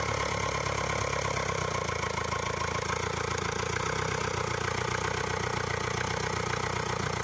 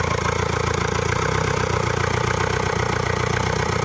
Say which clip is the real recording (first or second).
first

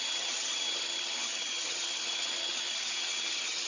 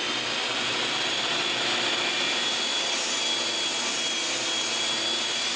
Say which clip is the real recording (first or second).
second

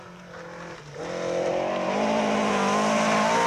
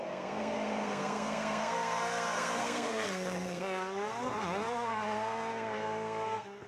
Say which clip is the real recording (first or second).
first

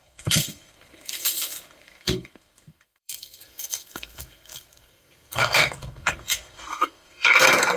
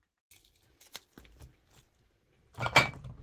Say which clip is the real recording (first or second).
second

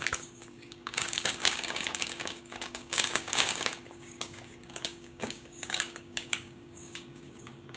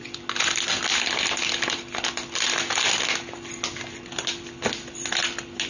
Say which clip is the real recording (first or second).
second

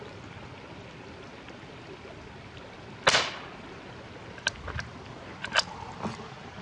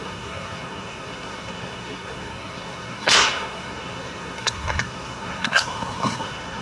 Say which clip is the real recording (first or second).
first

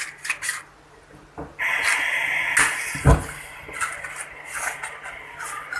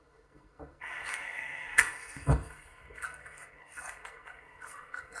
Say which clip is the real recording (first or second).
first